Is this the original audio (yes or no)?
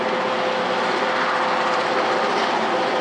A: yes